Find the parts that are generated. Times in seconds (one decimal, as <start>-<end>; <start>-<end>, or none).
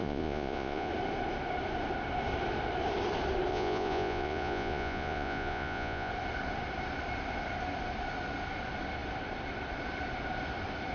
0.0-0.9; 3.5-6.1